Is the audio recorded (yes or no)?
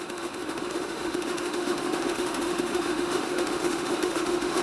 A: no